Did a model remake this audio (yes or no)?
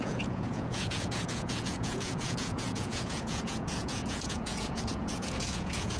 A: yes